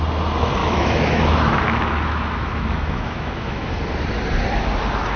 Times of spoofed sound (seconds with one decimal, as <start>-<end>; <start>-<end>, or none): 0.6-3.7